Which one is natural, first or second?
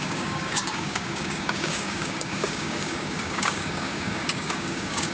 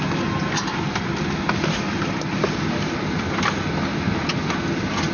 second